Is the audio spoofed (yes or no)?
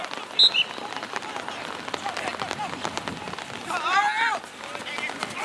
no